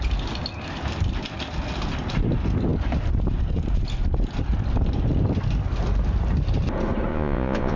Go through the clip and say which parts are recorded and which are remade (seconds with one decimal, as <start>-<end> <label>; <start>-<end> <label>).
0.0-7.1 recorded; 7.1-7.8 remade